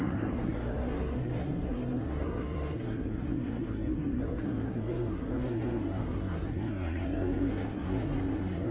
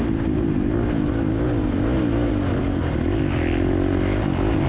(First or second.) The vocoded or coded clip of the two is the first